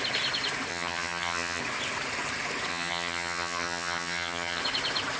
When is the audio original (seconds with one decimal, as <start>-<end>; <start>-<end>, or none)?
0.0-0.7; 1.6-2.7; 4.6-5.2